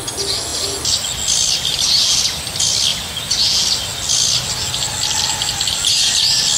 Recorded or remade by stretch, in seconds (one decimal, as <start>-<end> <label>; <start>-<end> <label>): 0.0-6.6 recorded